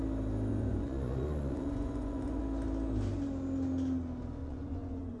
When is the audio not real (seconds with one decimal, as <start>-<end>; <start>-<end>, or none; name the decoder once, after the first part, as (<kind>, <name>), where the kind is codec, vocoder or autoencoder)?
0.5-2.4 (vocoder, Vocos); 4.4-5.2